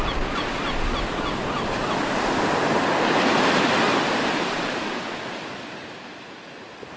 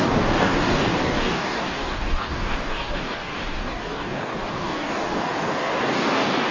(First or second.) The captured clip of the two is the first